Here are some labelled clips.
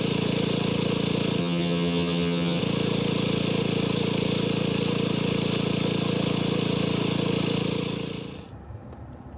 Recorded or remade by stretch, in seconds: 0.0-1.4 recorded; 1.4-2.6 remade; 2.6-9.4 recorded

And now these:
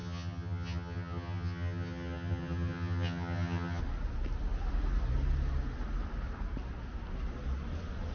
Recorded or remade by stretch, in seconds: 0.0-3.8 remade; 3.8-8.1 recorded